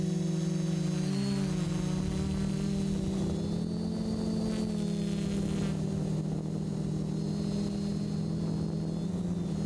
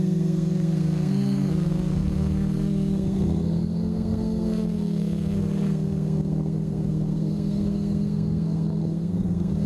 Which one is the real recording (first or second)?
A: first